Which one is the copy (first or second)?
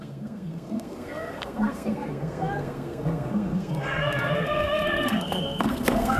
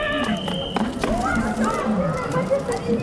first